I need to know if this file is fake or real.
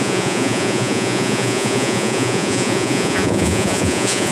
fake